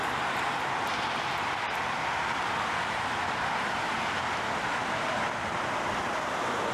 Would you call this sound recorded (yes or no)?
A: no